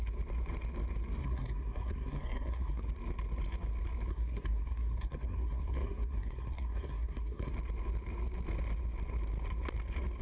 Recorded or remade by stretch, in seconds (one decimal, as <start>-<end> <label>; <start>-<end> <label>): 0.0-1.2 recorded; 1.2-2.8 remade; 2.8-4.1 recorded; 4.1-7.5 remade; 7.5-10.2 recorded